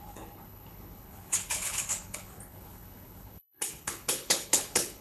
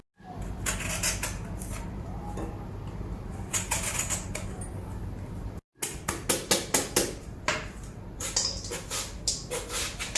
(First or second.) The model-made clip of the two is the first